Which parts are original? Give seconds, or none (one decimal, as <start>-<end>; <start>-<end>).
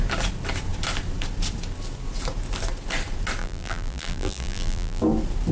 0.0-3.4; 5.0-5.5